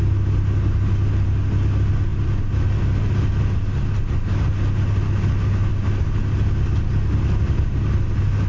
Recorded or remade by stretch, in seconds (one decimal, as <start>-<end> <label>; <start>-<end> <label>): 0.0-8.5 recorded